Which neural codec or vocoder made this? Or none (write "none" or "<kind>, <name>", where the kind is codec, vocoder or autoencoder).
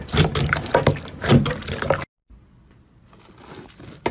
none